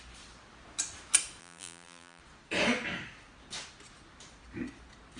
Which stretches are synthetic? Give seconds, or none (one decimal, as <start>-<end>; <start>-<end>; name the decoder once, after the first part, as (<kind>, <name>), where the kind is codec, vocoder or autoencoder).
1.4-2.2 (vocoder, BigVGAN v2)